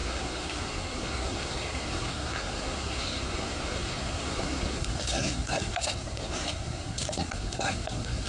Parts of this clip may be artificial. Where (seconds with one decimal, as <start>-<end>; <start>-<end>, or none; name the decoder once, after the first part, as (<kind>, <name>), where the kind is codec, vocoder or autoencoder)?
0.0-8.3 (codec, SNAC)